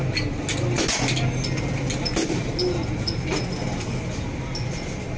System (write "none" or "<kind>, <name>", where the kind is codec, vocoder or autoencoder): none